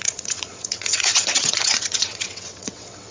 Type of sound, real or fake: fake